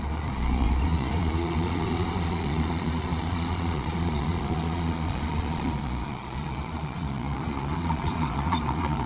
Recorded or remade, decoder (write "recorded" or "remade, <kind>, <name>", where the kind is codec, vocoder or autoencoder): remade, vocoder, Vocos